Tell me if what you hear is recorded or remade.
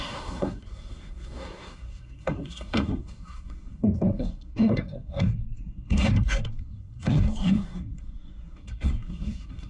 remade